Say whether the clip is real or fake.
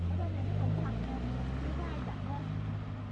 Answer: real